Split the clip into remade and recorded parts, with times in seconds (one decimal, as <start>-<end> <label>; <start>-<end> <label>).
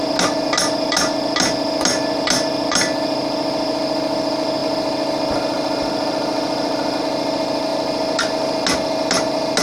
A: 0.0-9.6 recorded